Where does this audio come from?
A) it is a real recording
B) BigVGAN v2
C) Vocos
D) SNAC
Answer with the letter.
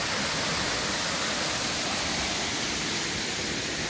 A